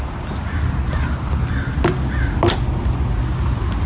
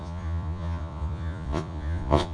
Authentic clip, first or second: first